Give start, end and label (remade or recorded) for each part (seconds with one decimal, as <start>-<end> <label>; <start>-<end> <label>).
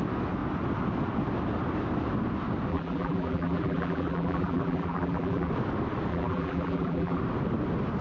0.0-2.7 recorded; 2.7-5.5 remade; 5.5-6.1 recorded; 6.1-7.2 remade; 7.2-8.0 recorded